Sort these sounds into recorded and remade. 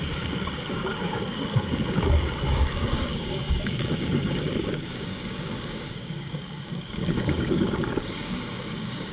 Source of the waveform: remade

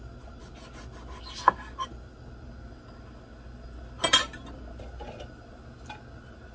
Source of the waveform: recorded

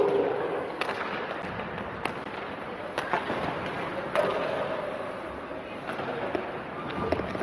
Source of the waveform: recorded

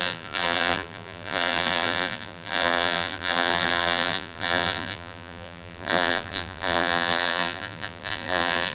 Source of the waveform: remade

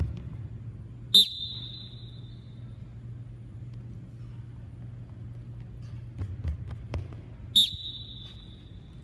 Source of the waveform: recorded